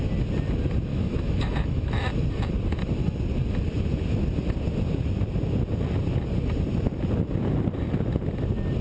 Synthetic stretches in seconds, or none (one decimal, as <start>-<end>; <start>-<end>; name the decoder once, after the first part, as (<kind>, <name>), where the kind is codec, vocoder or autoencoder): 0.9-1.9 (autoencoder, DAC-VAE)